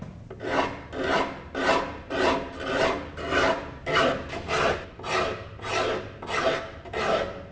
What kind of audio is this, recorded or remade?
recorded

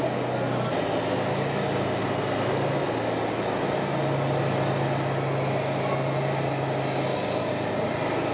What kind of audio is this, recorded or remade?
recorded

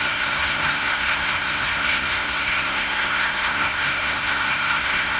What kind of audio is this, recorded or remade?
remade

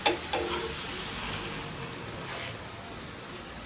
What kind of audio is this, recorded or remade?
recorded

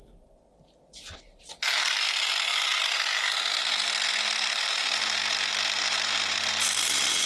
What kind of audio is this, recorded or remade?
recorded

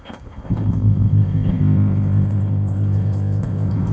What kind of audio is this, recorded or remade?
remade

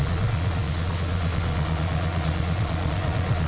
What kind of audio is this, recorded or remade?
remade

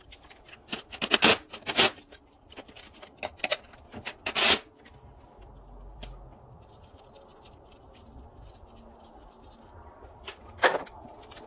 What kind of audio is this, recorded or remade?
recorded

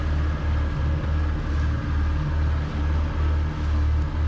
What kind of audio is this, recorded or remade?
recorded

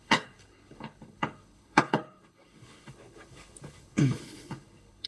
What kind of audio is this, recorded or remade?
remade